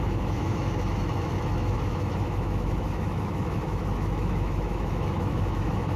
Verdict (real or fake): fake